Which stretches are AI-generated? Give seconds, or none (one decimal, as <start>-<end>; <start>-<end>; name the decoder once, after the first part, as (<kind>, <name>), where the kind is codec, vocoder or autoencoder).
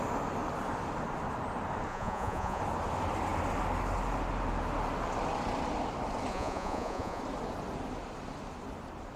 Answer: 1.9-2.6 (vocoder, Vocos); 6.3-7.2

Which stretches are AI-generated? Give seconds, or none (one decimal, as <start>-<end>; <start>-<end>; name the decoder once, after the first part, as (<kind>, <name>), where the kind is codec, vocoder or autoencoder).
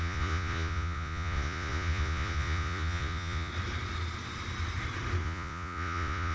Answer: 0.0-3.5 (vocoder, Vocos); 5.2-6.3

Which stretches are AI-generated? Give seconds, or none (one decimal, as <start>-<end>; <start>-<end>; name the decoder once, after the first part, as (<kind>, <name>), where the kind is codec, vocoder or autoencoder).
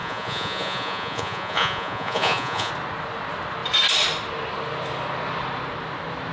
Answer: 0.0-2.7 (vocoder, Vocos)